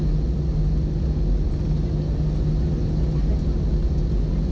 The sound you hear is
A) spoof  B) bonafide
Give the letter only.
B